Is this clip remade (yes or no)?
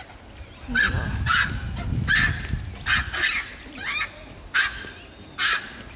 no